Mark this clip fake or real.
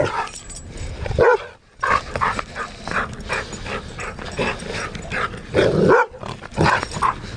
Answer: real